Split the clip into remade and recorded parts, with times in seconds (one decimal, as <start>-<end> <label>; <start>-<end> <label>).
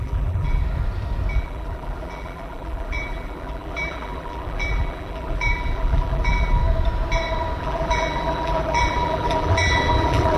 0.0-0.6 remade; 0.6-1.3 recorded; 1.3-6.6 remade; 6.6-7.6 recorded; 7.6-10.4 remade